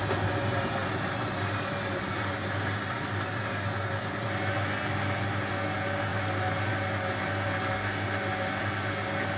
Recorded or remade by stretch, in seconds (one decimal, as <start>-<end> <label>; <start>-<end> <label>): 0.0-9.4 recorded